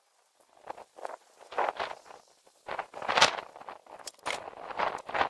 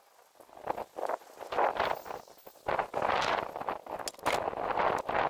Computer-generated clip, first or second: first